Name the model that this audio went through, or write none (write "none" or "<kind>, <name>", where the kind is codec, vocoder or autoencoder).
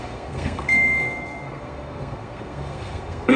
codec, SNAC